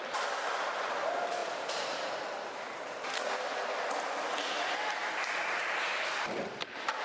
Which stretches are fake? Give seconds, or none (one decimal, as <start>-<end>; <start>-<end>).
5.0-5.6